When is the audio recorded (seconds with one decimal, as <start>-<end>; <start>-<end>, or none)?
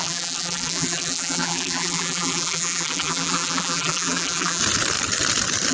4.6-5.7